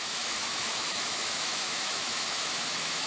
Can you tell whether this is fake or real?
fake